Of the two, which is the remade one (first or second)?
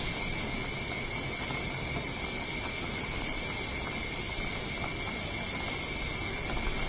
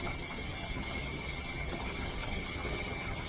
second